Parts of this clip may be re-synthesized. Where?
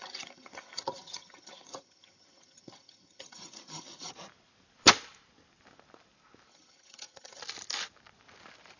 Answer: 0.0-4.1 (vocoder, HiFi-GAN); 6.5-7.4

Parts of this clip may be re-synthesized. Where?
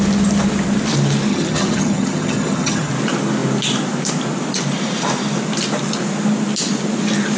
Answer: 1.3-2.9 (vocoder, HiFi-GAN)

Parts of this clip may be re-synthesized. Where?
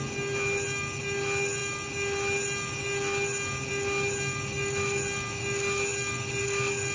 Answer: none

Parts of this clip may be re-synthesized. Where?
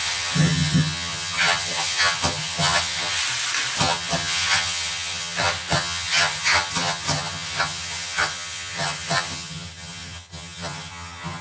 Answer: 0.0-3.2 (vocoder, HiFi-GAN); 3.8-11.4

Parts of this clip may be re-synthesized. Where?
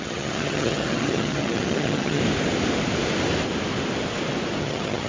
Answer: 0.0-2.2 (vocoder, HiFi-GAN); 4.6-5.1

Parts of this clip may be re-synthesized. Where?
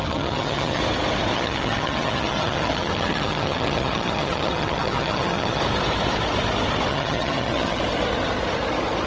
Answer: 0.0-0.8 (vocoder, HiFi-GAN); 1.3-5.6; 6.9-7.8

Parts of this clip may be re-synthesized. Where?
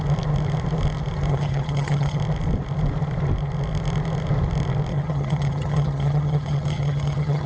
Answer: 1.3-2.2 (vocoder, HiFi-GAN); 4.9-7.5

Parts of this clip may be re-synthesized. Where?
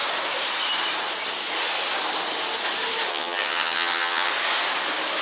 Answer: 3.1-4.3 (vocoder, HiFi-GAN)